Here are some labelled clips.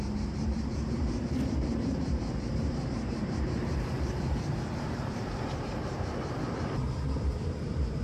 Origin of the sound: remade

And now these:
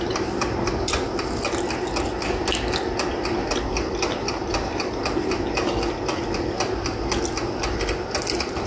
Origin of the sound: recorded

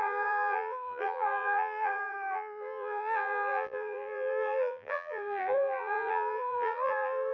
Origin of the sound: remade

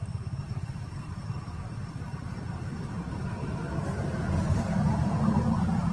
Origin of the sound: remade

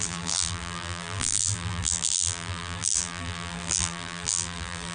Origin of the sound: remade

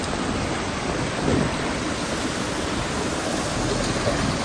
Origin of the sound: recorded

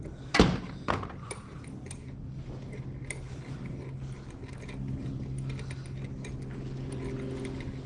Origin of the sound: recorded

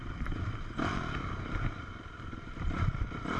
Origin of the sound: remade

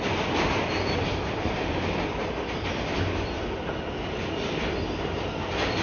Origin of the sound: remade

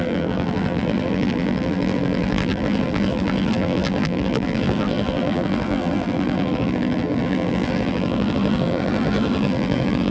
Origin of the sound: remade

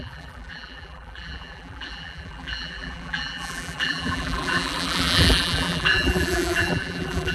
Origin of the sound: remade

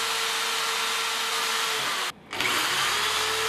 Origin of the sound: recorded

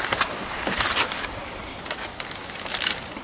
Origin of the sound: remade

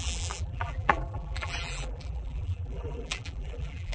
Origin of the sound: remade